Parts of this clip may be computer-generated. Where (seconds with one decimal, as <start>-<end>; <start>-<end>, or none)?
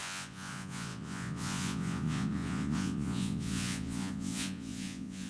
0.0-5.3